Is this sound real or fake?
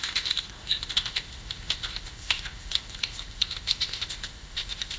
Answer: fake